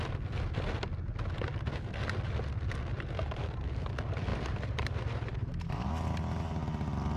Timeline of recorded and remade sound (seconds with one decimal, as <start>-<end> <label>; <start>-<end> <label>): 0.0-2.9 recorded; 2.9-3.5 remade; 3.5-4.3 recorded; 4.3-5.9 remade; 5.9-7.2 recorded